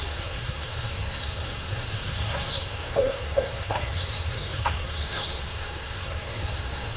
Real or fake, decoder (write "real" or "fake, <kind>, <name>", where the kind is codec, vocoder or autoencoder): fake, codec, SNAC